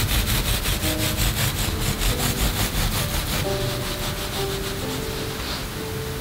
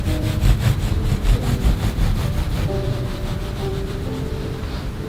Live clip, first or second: first